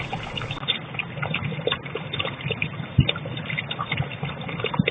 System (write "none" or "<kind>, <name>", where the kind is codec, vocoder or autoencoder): none